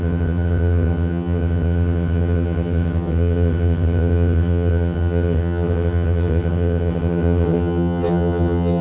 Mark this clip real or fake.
fake